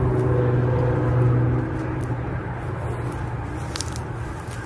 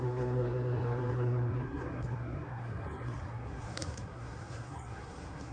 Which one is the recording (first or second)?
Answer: first